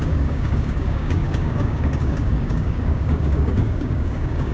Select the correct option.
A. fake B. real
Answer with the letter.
A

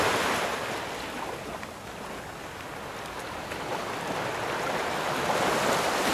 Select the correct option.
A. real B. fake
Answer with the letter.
A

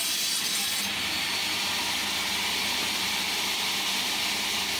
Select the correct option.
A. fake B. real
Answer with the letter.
B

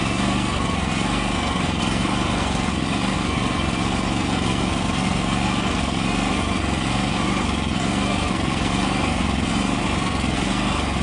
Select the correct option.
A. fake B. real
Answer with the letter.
A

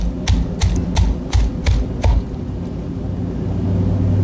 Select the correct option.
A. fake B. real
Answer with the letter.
B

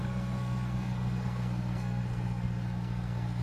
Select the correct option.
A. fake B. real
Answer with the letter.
A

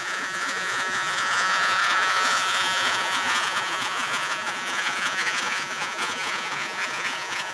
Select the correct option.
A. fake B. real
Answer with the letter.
A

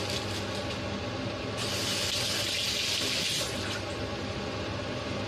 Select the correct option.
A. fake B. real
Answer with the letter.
B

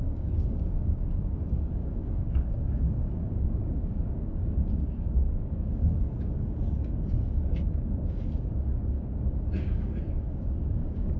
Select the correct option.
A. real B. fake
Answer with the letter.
B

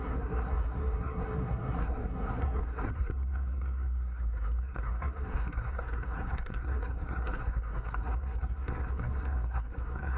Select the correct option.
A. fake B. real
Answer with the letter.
A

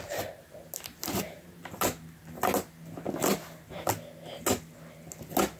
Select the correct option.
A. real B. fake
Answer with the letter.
A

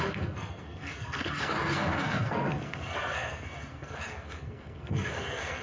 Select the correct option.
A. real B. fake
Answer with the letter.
B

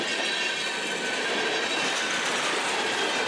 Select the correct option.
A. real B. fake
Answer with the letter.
A